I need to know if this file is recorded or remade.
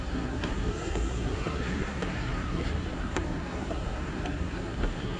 remade